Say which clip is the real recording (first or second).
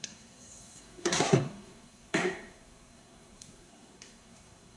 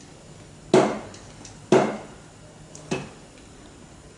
second